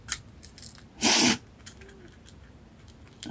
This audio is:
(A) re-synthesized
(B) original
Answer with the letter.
B